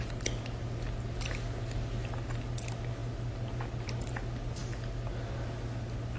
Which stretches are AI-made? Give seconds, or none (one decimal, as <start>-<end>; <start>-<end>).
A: none